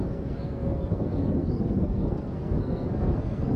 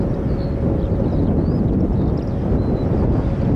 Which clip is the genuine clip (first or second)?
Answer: second